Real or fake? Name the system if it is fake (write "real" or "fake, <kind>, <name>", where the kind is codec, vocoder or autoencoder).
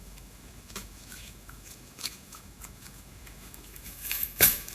fake, autoencoder, DAC-VAE